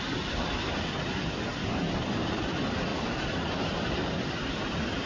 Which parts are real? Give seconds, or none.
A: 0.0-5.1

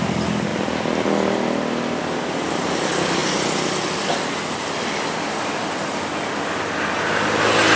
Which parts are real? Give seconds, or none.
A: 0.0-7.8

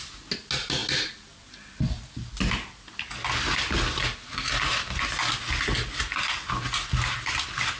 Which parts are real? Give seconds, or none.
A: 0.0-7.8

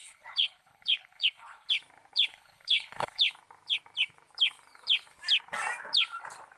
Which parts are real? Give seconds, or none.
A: 1.7-2.3; 3.2-6.6

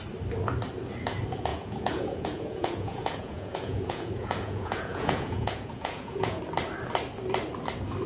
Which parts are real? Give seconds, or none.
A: 0.0-1.5; 6.4-8.1

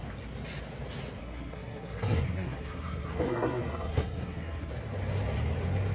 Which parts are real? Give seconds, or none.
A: 0.0-1.2; 4.7-5.9

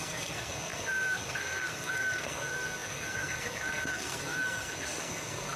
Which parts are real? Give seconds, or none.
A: none

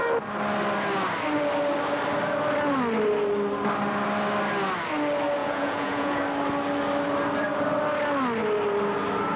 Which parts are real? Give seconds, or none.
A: 0.0-5.4; 6.2-9.4